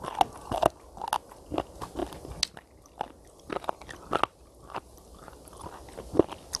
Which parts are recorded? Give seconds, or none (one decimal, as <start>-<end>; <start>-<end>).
0.0-6.6